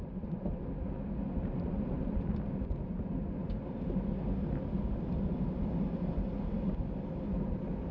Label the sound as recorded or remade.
recorded